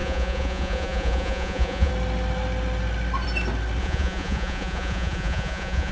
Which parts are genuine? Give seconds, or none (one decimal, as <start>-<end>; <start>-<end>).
1.9-3.8